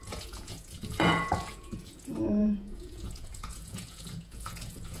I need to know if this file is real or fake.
fake